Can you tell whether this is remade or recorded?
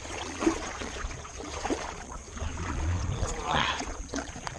remade